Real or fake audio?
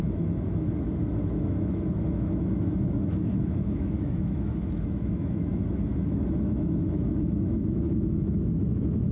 fake